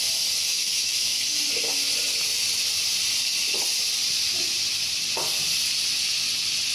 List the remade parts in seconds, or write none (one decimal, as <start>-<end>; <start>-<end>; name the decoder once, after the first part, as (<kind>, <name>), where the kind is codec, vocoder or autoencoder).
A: 0.5-1.2 (autoencoder, DAC-VAE)